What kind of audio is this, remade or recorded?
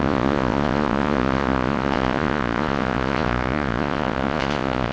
remade